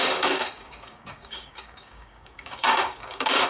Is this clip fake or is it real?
fake